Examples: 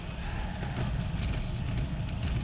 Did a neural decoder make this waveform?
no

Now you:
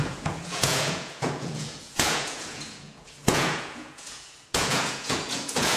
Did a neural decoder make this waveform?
yes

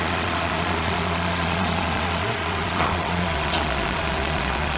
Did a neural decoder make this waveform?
yes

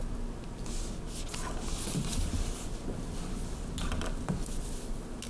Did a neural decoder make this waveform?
no